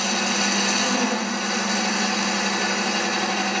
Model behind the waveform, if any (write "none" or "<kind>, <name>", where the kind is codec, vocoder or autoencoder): none